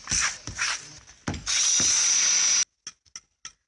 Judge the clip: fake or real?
real